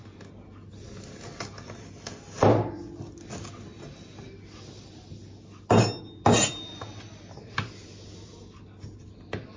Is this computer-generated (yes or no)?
no